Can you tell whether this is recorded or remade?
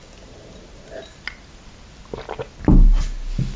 recorded